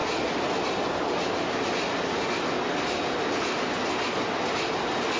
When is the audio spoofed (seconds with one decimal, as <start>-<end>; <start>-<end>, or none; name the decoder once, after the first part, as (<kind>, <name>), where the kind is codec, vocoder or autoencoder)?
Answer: none